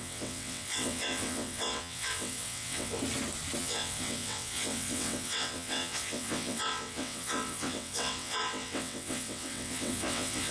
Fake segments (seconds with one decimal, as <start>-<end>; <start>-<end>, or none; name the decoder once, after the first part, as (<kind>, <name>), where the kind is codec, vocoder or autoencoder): 0.0-3.0 (vocoder, WaveNeXt); 3.6-10.5